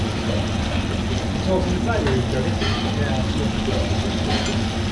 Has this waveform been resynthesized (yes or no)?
no